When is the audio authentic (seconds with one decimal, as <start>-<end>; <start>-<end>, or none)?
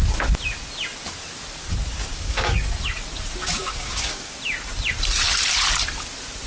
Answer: 0.0-2.1; 2.7-3.4; 4.3-6.5